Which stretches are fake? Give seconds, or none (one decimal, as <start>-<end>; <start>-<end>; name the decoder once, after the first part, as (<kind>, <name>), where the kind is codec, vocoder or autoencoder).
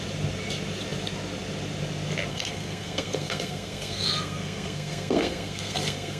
2.3-6.2 (codec, SNAC)